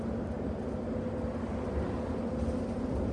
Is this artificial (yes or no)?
no